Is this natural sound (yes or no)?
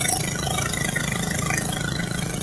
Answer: no